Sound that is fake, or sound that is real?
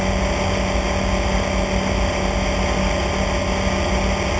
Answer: real